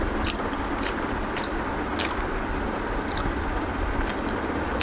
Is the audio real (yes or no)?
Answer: yes